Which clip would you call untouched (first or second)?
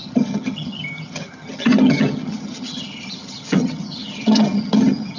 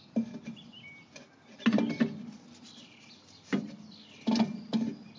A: second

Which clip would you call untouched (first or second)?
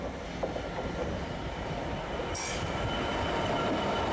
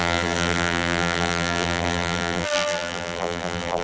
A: first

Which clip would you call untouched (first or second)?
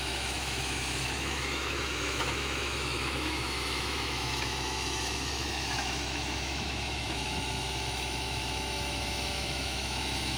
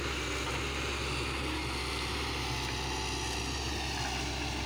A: second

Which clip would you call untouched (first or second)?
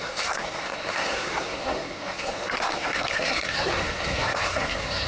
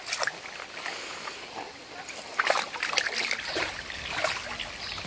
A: second